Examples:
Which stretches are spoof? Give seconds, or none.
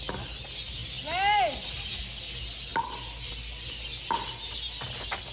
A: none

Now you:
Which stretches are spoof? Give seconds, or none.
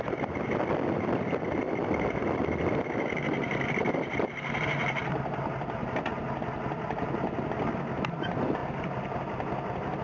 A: none